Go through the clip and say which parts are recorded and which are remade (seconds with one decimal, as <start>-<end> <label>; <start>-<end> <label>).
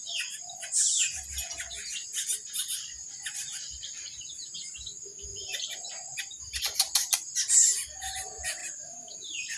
0.0-5.3 recorded; 5.3-6.6 remade; 6.6-8.6 recorded; 8.6-9.6 remade